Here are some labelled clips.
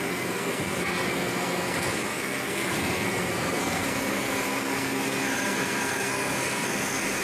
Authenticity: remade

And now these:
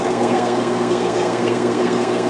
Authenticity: remade